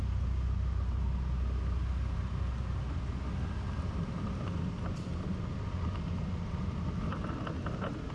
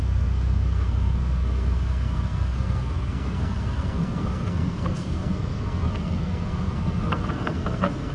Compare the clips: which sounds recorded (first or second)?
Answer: first